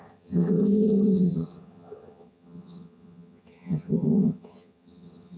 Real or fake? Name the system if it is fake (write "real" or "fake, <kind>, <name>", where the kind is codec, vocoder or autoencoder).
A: fake, vocoder, HiFi-GAN